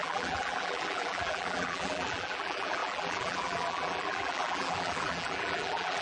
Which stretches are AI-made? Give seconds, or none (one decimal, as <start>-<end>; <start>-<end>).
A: 0.0-6.0